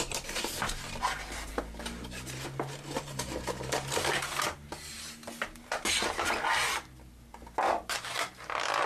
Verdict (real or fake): real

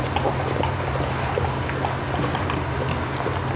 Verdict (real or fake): real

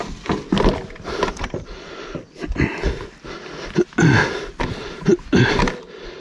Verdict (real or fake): real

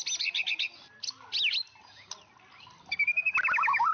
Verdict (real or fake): real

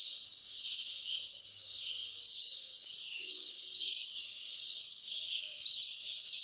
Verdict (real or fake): fake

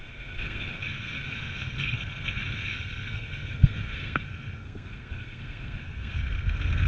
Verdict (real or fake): fake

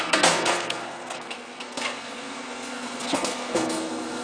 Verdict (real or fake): fake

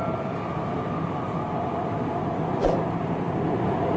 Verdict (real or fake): real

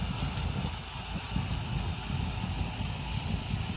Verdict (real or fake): real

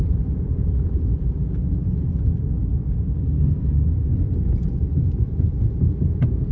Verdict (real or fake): real